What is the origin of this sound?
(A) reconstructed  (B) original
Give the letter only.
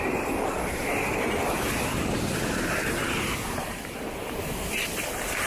B